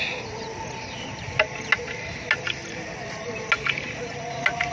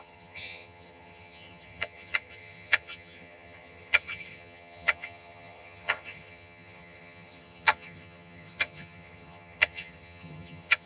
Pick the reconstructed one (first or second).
second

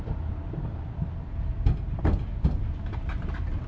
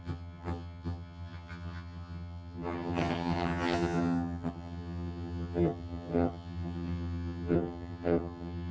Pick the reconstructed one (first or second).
second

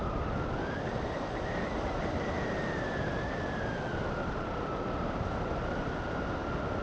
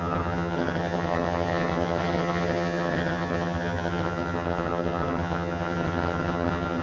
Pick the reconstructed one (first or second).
second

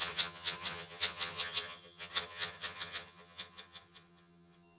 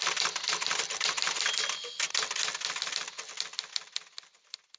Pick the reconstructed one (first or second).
first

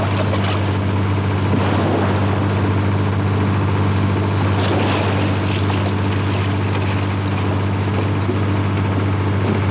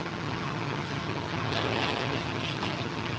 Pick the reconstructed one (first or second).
second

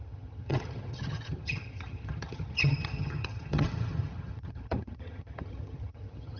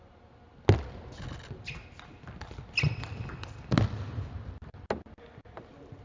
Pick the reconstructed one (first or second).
first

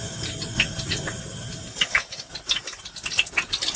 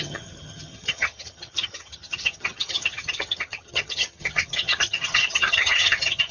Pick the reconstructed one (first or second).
second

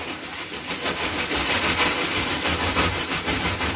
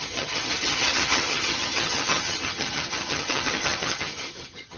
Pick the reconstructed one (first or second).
second